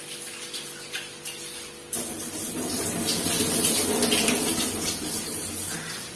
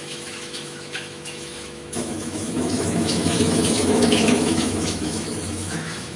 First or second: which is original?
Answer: first